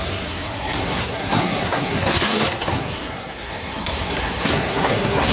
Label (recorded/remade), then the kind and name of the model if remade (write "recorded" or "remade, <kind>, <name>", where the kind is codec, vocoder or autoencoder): remade, codec, SNAC